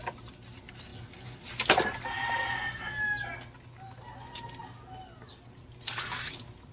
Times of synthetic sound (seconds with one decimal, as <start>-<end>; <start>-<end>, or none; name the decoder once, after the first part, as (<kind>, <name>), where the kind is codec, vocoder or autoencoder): none